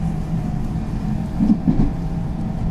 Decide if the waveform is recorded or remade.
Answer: recorded